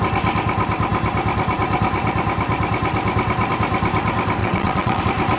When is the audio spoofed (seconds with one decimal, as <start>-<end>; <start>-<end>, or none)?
4.4-5.0